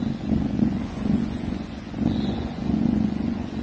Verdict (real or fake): fake